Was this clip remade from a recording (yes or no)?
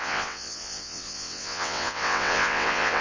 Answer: yes